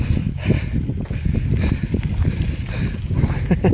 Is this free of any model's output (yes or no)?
yes